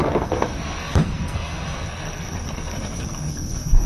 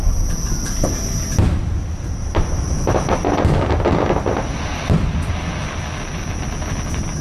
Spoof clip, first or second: first